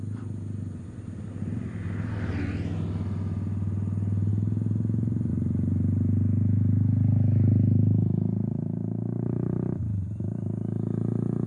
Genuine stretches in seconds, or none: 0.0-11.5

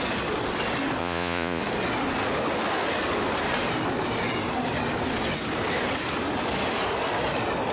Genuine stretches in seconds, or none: 0.0-1.0; 1.6-7.7

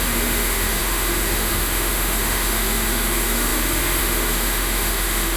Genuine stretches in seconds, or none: none